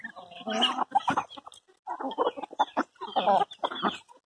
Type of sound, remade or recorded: recorded